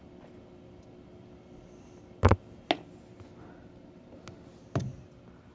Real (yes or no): yes